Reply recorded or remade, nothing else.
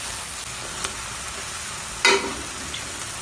recorded